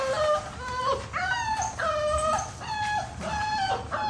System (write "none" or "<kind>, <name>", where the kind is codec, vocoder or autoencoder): none